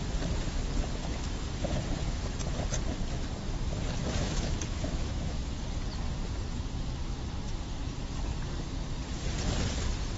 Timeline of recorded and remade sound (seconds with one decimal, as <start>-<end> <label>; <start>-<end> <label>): 0.0-4.0 recorded; 4.0-5.6 remade; 5.6-10.2 recorded